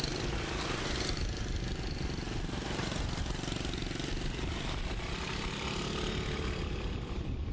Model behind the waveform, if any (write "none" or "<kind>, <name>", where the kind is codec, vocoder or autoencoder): none